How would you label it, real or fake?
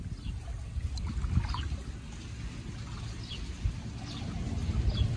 real